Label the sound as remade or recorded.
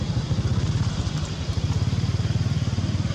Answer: recorded